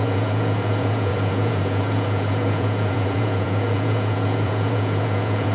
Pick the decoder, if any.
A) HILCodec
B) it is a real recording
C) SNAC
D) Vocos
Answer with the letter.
D